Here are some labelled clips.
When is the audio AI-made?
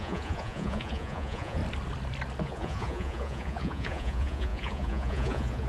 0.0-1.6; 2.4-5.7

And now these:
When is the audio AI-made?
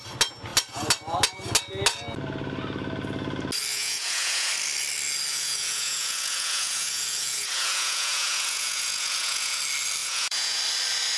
3.7-4.5; 5.3-9.6; 10.0-10.6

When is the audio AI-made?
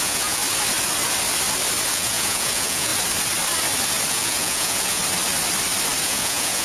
0.0-0.4; 1.9-2.9; 4.1-5.0; 6.0-6.6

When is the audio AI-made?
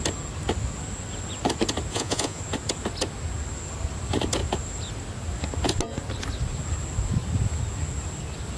1.9-2.4